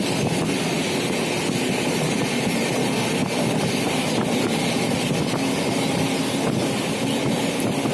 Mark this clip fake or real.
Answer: real